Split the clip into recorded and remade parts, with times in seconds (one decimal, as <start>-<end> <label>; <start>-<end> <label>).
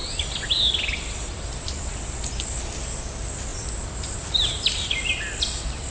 0.0-5.9 recorded